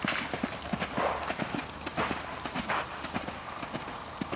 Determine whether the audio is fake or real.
real